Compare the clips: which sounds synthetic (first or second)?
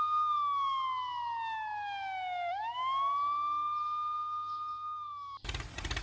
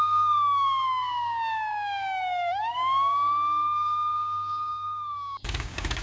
second